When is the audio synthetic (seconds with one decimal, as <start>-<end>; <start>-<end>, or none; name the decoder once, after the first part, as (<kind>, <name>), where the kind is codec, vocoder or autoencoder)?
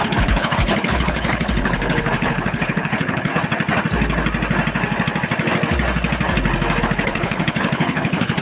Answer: 0.0-3.3 (codec, HILCodec); 6.8-8.4